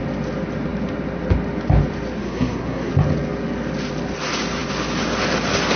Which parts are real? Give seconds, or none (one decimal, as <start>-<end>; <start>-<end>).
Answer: 0.0-2.2; 2.9-5.8